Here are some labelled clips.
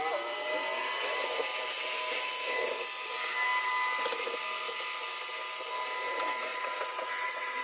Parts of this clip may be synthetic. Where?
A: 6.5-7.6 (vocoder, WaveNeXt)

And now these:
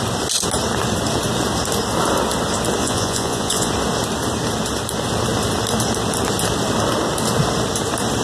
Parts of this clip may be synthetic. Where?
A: 2.8-3.7 (vocoder, Vocos)